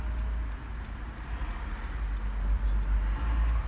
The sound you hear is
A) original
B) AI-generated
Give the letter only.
A